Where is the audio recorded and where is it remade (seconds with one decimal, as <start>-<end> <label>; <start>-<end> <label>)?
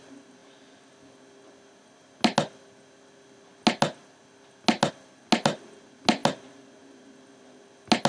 0.0-8.1 recorded